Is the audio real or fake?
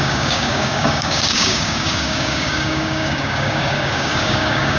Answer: fake